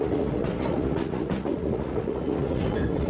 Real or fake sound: fake